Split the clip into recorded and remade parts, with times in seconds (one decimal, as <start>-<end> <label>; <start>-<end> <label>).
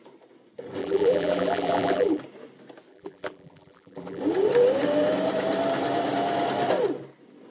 0.0-0.8 recorded; 0.8-2.2 remade; 2.2-2.9 recorded; 2.9-4.2 remade; 4.2-7.5 recorded